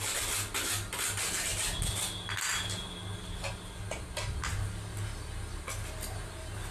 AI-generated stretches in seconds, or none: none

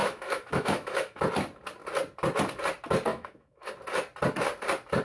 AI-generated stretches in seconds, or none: 0.0-1.2 (autoencoder, DAC-VAE); 3.1-3.7

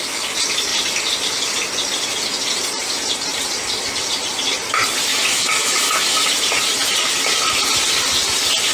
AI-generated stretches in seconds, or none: 5.1-6.3 (autoencoder, DAC-VAE)

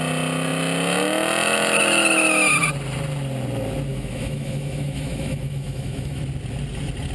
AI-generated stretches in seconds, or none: 3.9-6.2 (autoencoder, DAC-VAE)

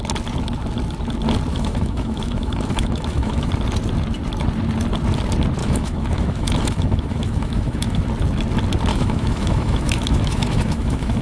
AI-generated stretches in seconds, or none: 1.5-3.5 (autoencoder, DAC-VAE); 5.6-8.0; 8.9-11.2

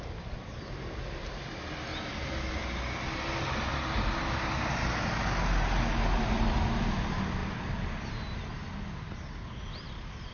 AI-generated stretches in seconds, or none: none